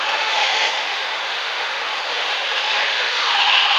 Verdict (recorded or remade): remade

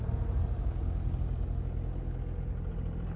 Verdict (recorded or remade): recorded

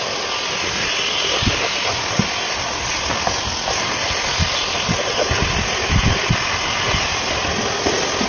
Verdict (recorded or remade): recorded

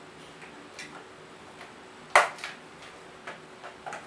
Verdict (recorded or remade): recorded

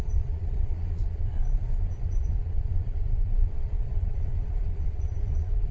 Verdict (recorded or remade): remade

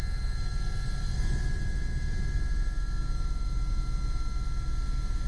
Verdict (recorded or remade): recorded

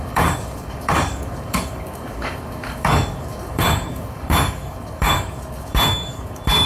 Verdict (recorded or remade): remade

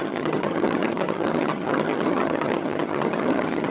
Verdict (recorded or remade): remade